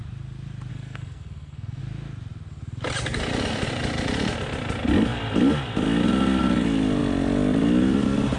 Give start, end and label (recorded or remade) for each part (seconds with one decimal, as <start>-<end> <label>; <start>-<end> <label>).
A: 0.0-0.7 recorded; 0.7-1.8 remade; 1.8-8.4 recorded